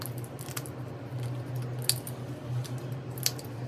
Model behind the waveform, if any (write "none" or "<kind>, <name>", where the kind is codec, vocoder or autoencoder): none